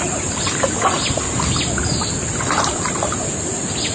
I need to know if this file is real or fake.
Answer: real